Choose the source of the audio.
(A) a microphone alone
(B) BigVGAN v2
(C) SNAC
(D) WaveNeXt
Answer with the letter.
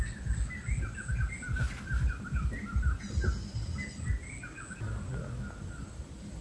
A